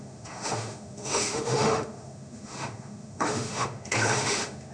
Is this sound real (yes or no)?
no